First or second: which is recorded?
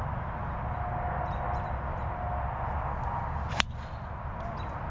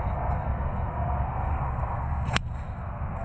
first